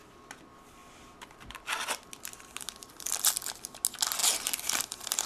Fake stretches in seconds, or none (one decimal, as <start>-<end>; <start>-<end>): none